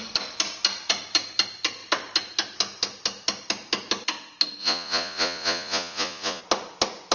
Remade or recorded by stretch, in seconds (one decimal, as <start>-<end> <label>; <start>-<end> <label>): 0.0-4.6 recorded; 4.6-6.4 remade; 6.4-7.1 recorded

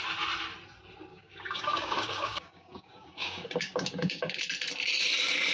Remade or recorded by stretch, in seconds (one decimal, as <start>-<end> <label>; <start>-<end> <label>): 0.0-1.1 recorded; 1.1-4.4 remade; 4.4-5.5 recorded

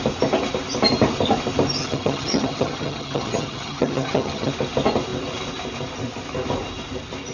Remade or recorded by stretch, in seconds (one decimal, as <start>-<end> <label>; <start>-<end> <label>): 0.0-1.8 recorded; 1.8-4.5 remade; 4.5-7.3 recorded

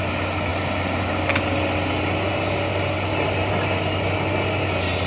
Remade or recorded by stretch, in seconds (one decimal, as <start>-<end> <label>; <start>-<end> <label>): 0.0-5.1 recorded